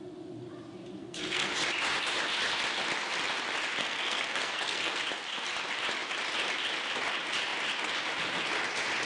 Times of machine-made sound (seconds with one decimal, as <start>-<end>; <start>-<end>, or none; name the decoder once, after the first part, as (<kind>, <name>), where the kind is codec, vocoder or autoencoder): 1.0-1.5 (codec, SNAC); 3.8-5.0